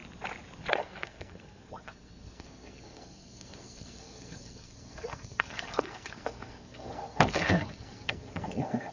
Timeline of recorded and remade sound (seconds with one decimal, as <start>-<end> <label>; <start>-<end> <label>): 0.0-0.7 recorded; 0.7-8.9 remade